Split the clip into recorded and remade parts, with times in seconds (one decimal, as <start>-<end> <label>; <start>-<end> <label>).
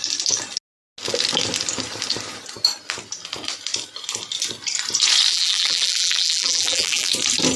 0.0-5.3 recorded; 5.3-7.1 remade; 7.1-7.6 recorded